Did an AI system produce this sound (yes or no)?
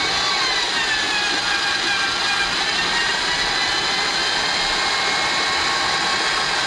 no